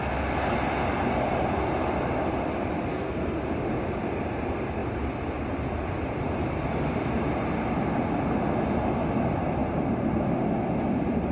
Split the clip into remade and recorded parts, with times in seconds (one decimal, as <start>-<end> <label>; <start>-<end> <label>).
0.0-2.9 recorded; 2.9-3.4 remade; 3.4-11.3 recorded